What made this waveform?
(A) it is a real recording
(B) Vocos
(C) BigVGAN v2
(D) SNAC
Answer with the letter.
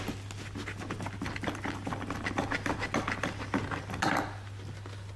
A